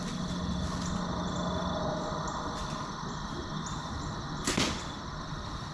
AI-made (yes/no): no